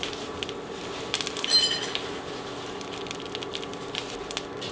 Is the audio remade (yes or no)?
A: no